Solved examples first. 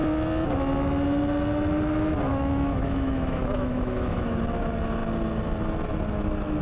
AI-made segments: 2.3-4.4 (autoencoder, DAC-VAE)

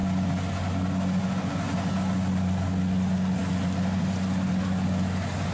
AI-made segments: none

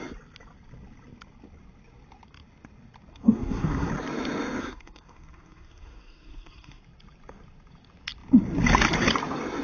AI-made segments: 3.1-3.9 (codec, SNAC); 4.6-6.8